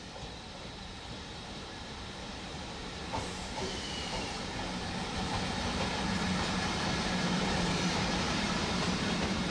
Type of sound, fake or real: fake